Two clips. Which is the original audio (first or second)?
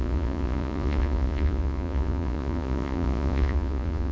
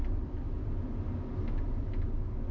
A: second